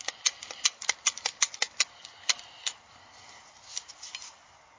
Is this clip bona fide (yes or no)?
yes